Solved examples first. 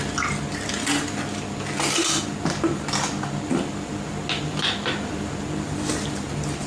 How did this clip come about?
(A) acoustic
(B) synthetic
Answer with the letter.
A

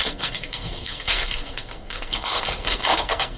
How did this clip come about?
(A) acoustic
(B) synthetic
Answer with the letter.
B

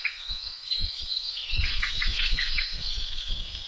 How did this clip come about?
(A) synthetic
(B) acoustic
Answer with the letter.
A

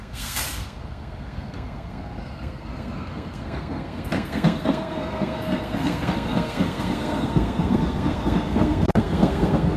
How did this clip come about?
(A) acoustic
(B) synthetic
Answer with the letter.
B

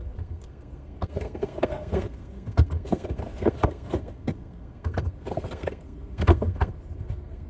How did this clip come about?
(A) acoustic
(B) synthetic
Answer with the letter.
B